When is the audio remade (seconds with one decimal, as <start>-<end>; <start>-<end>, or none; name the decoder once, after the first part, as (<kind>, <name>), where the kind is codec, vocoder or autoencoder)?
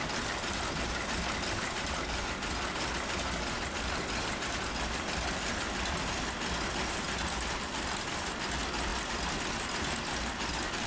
none